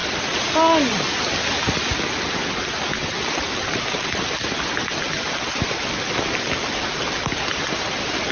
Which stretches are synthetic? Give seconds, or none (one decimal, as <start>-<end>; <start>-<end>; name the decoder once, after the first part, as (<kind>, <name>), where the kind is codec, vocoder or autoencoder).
none